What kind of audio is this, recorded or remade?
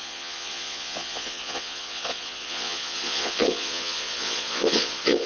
remade